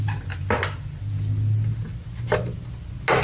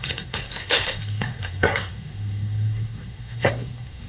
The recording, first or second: first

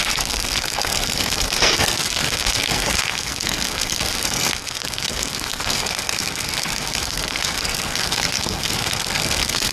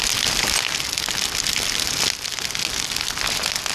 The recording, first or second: second